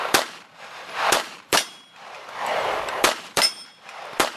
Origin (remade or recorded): remade